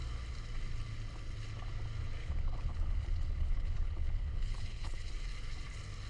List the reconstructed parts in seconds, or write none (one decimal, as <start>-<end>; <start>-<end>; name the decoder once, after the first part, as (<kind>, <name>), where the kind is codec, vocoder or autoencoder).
2.2-5.1 (codec, HILCodec)